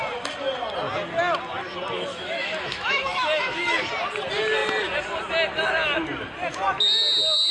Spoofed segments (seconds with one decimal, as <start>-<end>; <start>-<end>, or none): 2.1-3.9